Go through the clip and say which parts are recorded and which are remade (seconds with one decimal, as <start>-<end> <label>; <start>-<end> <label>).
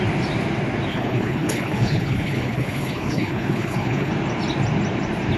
0.0-0.9 recorded; 0.9-4.1 remade; 4.1-5.4 recorded